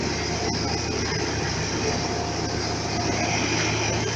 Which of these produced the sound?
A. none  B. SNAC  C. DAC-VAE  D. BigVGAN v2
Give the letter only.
A